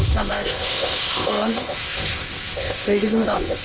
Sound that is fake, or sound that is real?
fake